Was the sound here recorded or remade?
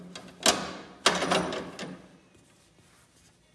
recorded